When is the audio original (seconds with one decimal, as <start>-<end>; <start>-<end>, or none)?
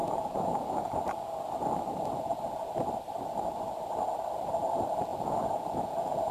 1.1-5.1